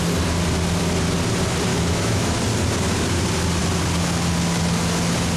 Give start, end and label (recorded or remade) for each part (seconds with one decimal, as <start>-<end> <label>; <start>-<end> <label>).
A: 0.0-1.7 recorded; 1.7-2.4 remade; 2.4-5.4 recorded